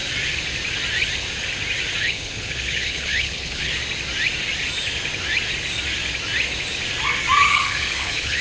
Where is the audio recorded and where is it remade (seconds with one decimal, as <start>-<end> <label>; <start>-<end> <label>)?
0.0-2.0 recorded; 2.0-3.7 remade; 3.7-7.5 recorded; 7.5-8.4 remade

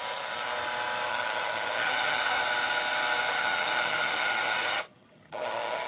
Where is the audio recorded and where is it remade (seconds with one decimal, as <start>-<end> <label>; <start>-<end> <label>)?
0.0-0.5 remade; 0.5-1.1 recorded; 1.1-2.4 remade; 2.4-3.3 recorded; 3.3-5.9 remade

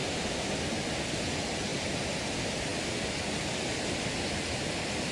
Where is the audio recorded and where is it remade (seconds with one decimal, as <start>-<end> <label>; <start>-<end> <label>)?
0.0-0.6 remade; 0.6-1.7 recorded; 1.7-2.2 remade; 2.2-5.1 recorded

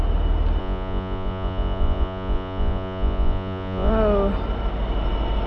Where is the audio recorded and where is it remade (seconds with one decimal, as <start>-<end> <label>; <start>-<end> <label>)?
0.0-0.6 recorded; 0.6-3.9 remade; 3.9-5.5 recorded

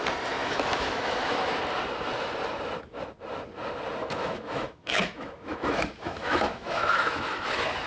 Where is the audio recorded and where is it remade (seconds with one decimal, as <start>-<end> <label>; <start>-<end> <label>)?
0.0-0.4 recorded; 0.4-1.5 remade; 1.5-4.0 recorded; 4.0-7.9 remade

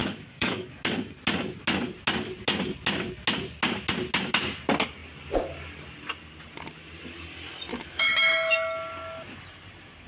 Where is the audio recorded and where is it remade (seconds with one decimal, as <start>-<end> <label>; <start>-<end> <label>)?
0.0-0.7 remade; 0.7-7.7 recorded; 7.7-8.5 remade; 8.5-10.1 recorded

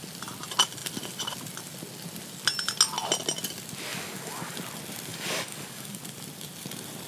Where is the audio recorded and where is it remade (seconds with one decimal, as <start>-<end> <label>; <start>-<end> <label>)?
0.0-3.9 recorded; 3.9-4.5 remade; 4.5-5.1 recorded; 5.1-6.0 remade; 6.0-7.1 recorded

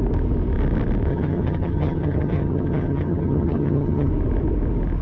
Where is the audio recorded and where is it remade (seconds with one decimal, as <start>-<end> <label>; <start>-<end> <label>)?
0.0-1.1 recorded; 1.1-4.1 remade; 4.1-5.0 recorded